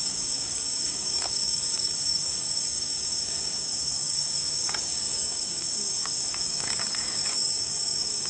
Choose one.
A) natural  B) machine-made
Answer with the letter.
B